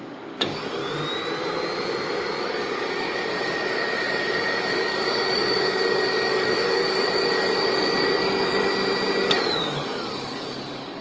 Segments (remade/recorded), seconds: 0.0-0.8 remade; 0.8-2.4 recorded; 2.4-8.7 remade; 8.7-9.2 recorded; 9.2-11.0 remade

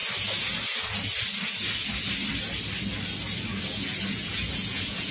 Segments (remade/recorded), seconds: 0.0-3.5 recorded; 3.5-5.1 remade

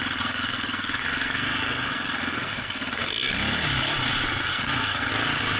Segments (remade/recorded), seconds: 0.0-3.3 remade; 3.3-4.5 recorded; 4.5-5.1 remade; 5.1-5.6 recorded

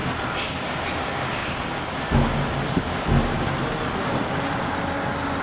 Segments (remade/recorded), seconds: 0.0-5.4 recorded

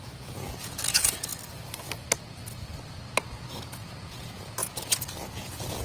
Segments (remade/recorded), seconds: 0.0-1.3 remade; 1.3-3.3 recorded; 3.3-5.8 remade

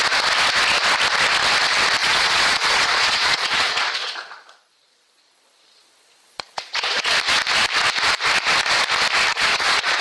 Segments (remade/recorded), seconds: 0.0-2.0 recorded; 2.0-7.1 remade; 7.1-9.3 recorded; 9.3-10.0 remade

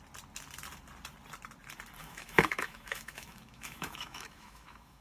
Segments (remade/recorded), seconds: 0.0-2.0 recorded; 2.0-5.0 remade